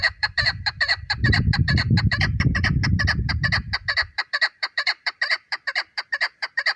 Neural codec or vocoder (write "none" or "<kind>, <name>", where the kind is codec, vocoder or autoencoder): vocoder, BigVGAN v2